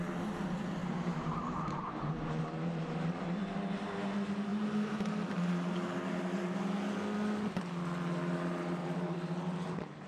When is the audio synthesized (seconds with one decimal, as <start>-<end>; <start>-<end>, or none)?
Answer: 0.8-2.4; 4.5-5.0; 8.8-9.4